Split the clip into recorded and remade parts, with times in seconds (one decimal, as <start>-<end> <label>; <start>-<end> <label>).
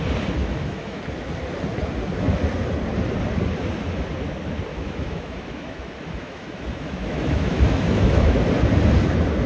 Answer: 0.0-0.4 recorded; 0.4-1.0 remade; 1.0-4.7 recorded; 4.7-8.4 remade; 8.4-9.5 recorded